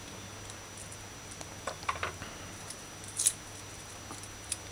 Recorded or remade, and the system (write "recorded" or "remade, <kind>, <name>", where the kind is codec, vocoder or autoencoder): recorded